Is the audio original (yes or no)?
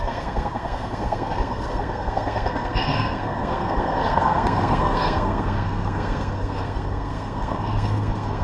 no